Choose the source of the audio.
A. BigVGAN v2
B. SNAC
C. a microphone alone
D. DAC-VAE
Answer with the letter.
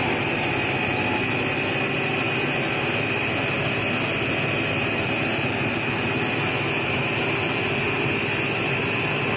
C